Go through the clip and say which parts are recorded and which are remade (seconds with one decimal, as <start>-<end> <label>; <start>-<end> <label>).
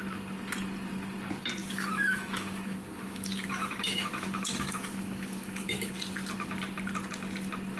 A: 0.0-1.6 recorded; 1.6-5.9 remade; 5.9-7.8 recorded